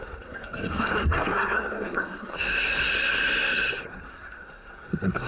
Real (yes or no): no